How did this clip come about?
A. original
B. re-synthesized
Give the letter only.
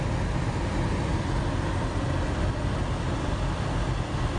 A